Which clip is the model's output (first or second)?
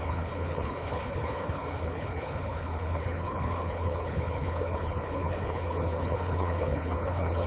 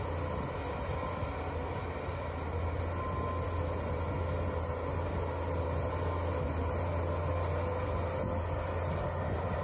first